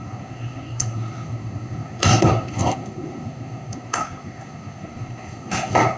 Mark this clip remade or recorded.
remade